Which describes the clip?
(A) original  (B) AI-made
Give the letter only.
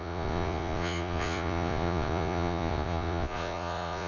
B